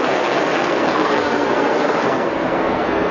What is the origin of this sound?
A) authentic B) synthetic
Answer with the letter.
B